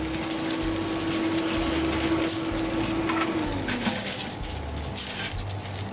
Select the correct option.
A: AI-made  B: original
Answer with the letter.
B